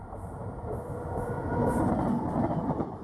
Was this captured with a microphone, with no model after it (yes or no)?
no